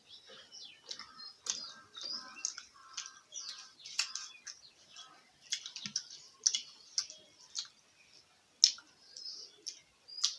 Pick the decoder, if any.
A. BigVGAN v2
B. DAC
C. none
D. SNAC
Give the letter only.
C